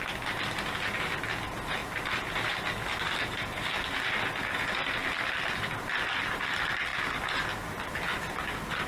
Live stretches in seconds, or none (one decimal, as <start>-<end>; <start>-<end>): 0.0-8.9